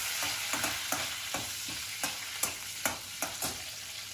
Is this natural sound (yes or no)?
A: yes